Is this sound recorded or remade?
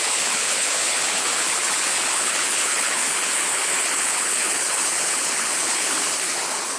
remade